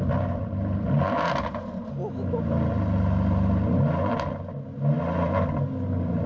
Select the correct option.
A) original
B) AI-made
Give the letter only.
A